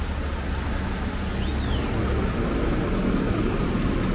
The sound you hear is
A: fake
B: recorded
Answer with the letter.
B